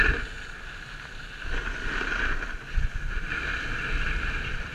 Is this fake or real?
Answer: real